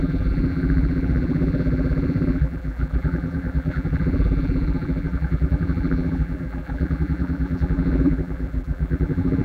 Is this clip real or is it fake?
fake